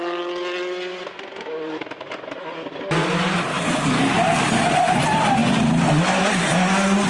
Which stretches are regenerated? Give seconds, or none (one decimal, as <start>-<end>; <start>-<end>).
none